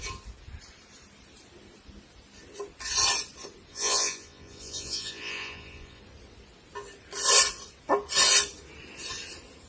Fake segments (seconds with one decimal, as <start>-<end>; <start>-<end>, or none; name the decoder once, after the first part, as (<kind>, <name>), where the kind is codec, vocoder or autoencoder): 3.7-6.0 (vocoder, Vocos)